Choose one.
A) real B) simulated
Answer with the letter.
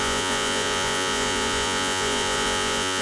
B